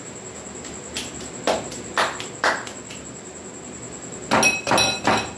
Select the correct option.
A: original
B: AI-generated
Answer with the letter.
A